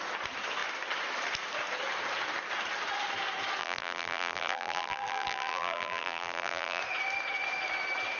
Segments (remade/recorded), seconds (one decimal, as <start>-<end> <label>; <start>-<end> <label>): 0.0-3.6 recorded; 3.6-6.8 remade; 6.8-8.2 recorded